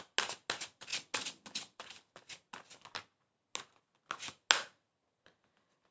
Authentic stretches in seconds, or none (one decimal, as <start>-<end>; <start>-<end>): 0.0-5.9